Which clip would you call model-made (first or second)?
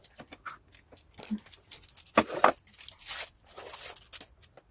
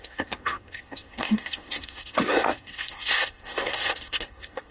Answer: second